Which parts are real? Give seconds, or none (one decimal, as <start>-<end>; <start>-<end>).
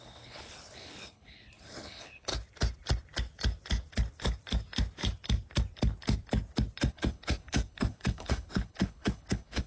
2.3-6.9